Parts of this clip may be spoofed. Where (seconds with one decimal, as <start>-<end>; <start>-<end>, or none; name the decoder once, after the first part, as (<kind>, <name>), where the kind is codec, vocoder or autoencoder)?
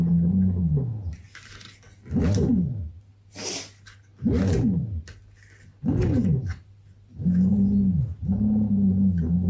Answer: none